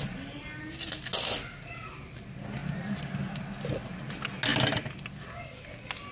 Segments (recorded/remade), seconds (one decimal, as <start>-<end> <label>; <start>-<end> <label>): 0.0-6.1 recorded